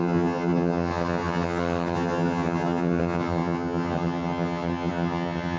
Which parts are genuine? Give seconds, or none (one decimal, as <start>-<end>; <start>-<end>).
none